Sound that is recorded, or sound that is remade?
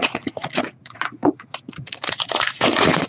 remade